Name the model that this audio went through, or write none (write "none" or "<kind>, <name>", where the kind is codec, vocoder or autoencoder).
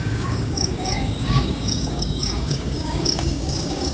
codec, DAC